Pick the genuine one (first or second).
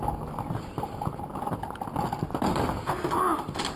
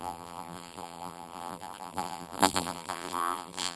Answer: first